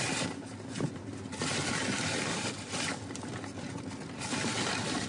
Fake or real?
real